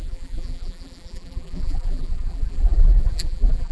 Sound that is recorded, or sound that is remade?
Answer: remade